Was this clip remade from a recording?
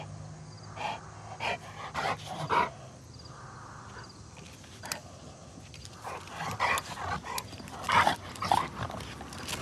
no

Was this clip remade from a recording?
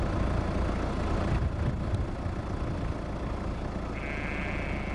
no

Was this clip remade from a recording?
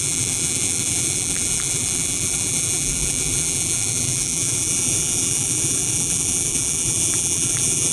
yes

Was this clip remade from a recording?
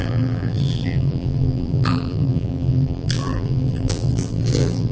yes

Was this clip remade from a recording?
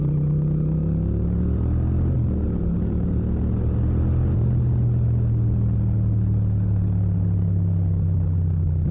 no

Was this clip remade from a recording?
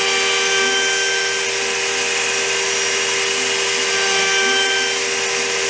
no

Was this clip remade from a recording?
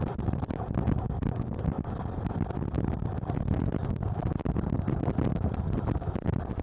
no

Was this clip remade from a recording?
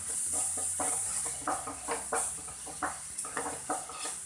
no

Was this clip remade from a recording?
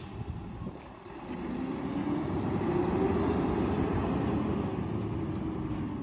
no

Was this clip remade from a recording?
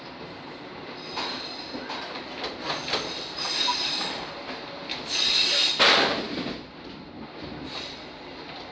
no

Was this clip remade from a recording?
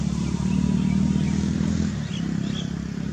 no